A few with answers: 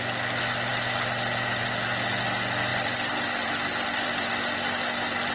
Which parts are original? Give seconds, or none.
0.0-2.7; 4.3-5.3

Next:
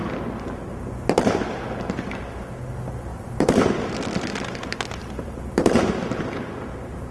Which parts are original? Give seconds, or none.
0.0-3.1; 3.7-5.0; 6.5-7.1

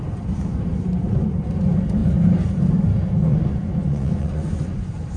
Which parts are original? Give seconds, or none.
0.0-3.3